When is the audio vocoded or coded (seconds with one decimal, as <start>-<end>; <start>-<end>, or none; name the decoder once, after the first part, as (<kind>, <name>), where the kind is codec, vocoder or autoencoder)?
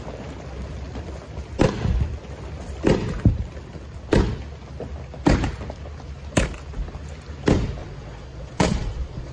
7.8-9.3 (vocoder, Vocos)